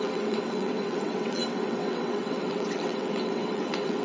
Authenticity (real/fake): fake